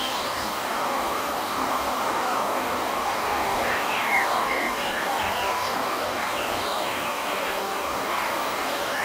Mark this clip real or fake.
fake